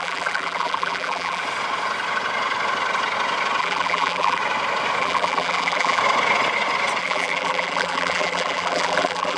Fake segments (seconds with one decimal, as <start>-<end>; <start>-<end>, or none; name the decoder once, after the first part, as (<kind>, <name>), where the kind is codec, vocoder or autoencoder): 0.0-1.4 (vocoder, BigVGAN v2); 3.6-4.4; 5.0-6.0; 7.0-9.4